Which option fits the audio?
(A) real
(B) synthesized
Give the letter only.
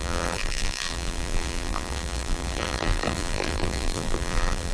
B